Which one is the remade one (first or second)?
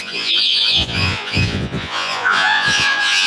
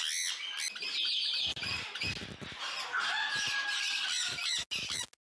first